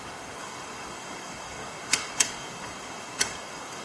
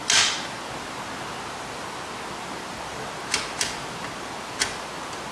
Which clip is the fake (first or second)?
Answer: first